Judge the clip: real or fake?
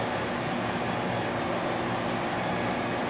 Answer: real